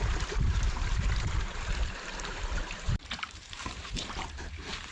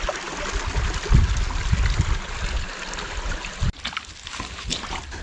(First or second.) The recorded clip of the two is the second